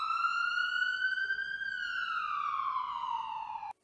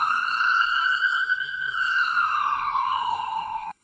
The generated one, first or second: second